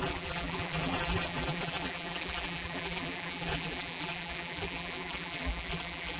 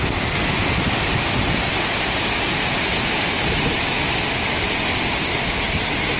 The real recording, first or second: second